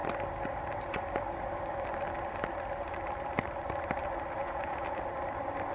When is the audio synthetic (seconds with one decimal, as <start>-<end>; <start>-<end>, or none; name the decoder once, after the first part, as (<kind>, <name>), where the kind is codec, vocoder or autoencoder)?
4.4-5.0 (vocoder, Vocos)